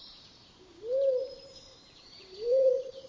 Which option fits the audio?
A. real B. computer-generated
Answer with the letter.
B